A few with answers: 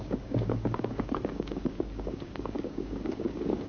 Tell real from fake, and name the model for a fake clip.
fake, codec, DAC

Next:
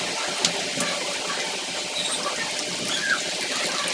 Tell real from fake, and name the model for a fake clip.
real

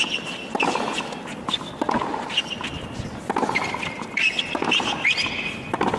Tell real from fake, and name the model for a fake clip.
real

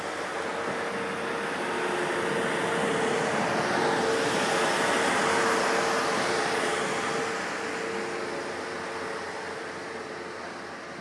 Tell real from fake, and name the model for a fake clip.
real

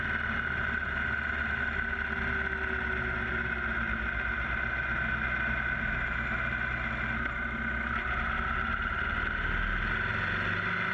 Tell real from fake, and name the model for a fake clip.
real